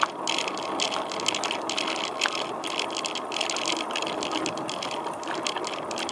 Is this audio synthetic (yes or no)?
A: no